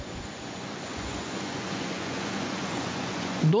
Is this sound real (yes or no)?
no